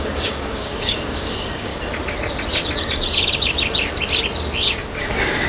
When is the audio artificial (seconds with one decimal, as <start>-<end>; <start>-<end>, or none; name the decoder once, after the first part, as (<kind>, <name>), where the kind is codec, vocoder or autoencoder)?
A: 0.0-1.7 (codec, DAC); 5.0-5.5